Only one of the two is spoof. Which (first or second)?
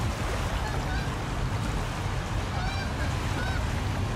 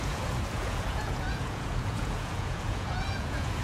second